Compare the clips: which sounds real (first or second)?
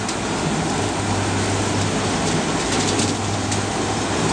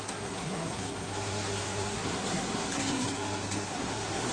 first